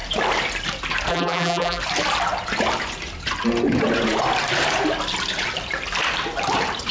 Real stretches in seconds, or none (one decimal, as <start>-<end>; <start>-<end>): 0.0-1.1; 1.8-6.9